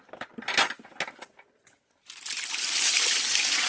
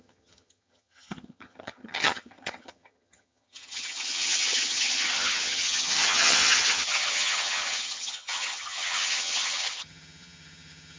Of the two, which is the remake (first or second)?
second